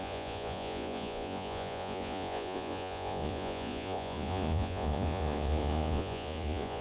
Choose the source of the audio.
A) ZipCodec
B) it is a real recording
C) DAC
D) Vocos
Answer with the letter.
D